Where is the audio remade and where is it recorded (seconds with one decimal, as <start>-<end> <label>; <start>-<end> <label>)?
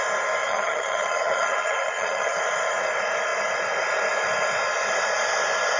0.0-0.4 recorded; 0.4-2.4 remade; 2.4-5.8 recorded